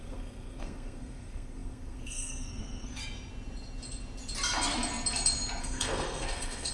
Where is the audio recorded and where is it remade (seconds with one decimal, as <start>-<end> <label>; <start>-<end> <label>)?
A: 0.0-3.0 remade; 3.0-5.6 recorded; 5.6-6.7 remade

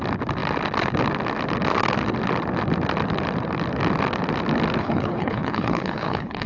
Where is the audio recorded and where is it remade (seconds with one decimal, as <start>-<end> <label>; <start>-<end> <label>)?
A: 0.0-4.8 recorded; 4.8-6.5 remade

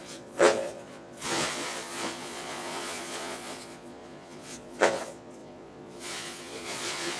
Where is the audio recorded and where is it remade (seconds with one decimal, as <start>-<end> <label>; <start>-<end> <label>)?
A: 0.0-7.2 remade

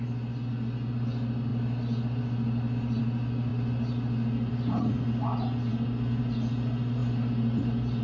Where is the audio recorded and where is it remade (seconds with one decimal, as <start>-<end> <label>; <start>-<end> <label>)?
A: 0.0-8.0 recorded

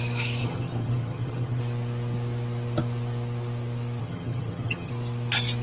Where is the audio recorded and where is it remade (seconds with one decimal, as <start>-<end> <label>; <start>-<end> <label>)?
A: 0.0-0.4 recorded; 0.4-1.6 remade; 1.6-4.0 recorded; 4.0-4.9 remade; 4.9-5.6 recorded

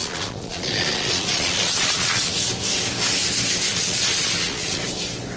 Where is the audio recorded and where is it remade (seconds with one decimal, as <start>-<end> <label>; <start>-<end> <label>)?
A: 0.0-2.3 remade; 2.3-3.7 recorded; 3.7-4.8 remade; 4.8-5.4 recorded

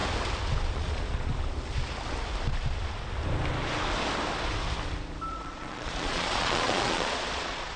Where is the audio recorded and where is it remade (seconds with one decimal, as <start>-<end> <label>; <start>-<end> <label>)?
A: 0.0-0.7 recorded; 0.7-1.3 remade; 1.3-5.3 recorded; 5.3-7.8 remade